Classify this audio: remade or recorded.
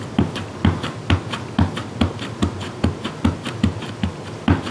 recorded